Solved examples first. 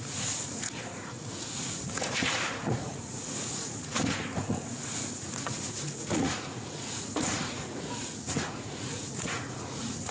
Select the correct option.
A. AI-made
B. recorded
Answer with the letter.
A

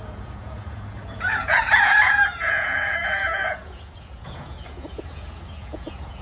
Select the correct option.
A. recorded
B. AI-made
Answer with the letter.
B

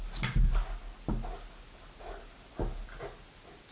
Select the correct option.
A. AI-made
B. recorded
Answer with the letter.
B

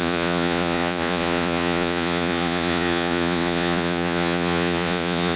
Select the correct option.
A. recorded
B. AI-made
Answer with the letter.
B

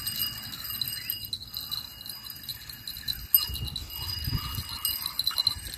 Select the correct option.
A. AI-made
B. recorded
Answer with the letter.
B